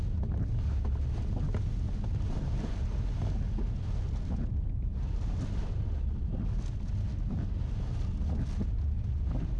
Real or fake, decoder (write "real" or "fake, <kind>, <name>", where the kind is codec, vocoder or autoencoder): real